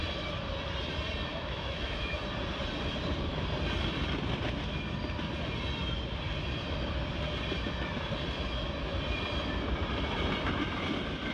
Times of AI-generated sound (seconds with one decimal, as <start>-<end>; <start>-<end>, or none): 1.3-2.2